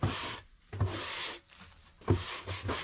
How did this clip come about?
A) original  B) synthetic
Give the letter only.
A